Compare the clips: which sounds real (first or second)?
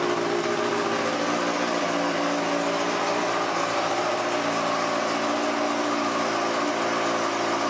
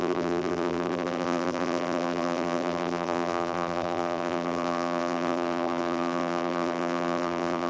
first